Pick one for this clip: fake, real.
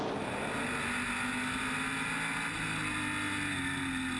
real